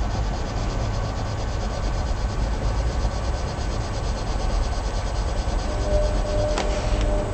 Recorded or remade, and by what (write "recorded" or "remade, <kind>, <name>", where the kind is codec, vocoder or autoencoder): recorded